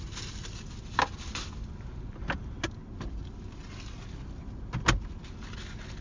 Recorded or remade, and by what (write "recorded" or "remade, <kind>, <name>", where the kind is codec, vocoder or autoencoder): recorded